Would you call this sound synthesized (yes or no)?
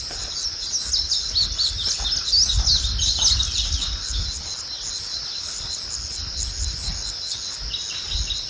no